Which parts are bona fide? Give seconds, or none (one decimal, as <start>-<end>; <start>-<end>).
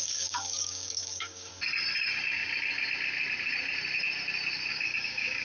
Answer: 1.5-4.7